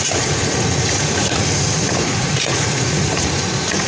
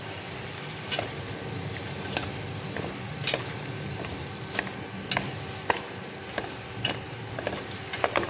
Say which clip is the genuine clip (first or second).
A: second